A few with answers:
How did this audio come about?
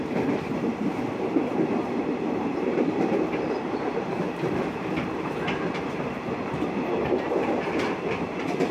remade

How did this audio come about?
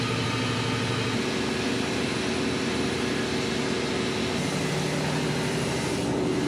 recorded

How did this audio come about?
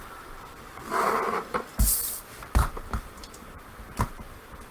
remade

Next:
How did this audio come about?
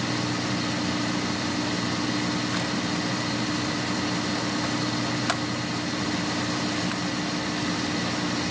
recorded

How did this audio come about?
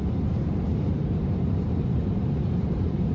remade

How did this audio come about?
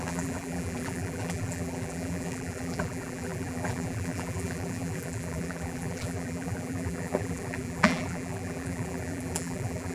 remade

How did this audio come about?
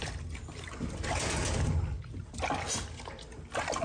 remade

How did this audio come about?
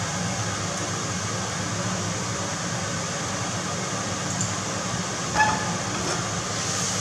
recorded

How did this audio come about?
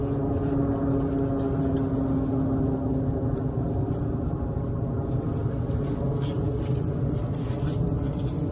recorded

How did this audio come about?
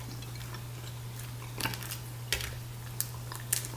recorded